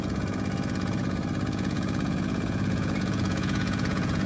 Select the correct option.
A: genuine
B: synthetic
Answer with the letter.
B